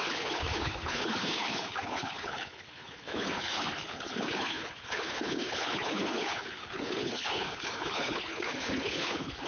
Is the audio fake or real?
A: fake